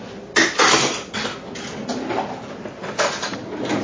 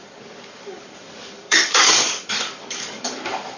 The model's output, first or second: second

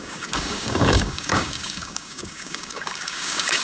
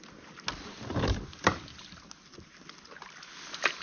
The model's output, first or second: first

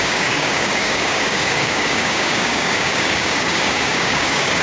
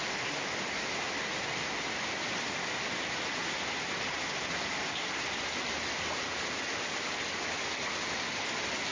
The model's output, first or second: first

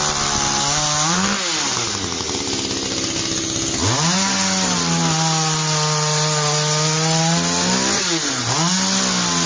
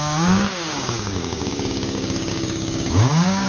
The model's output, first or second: second